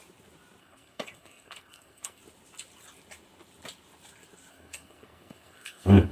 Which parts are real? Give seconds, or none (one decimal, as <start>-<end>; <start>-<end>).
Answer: 0.0-0.6; 2.2-4.5